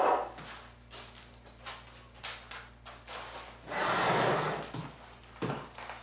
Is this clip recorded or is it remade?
recorded